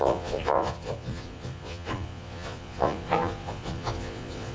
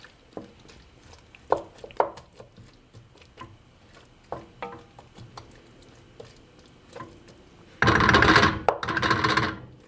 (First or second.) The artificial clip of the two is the first